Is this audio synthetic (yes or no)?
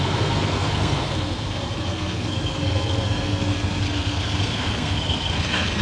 yes